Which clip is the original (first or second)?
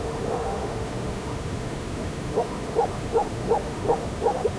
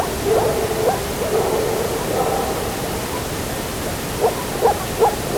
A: second